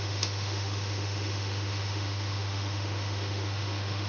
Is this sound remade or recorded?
remade